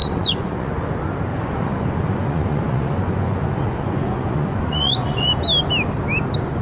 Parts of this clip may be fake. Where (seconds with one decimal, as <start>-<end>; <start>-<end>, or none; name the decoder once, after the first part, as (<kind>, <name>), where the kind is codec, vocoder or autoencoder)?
0.0-0.7 (vocoder, Vocos); 1.3-5.3